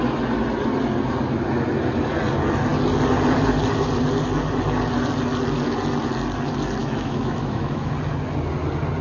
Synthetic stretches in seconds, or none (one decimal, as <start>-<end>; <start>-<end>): 6.8-7.9